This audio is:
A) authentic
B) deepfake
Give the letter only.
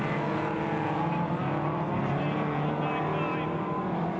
A